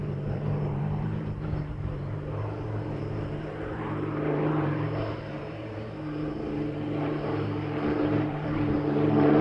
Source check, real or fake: fake